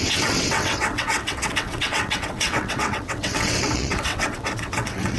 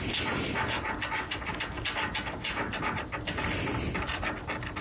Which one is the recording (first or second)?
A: second